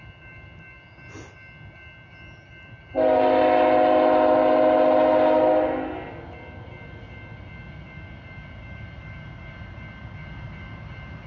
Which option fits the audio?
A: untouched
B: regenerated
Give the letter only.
A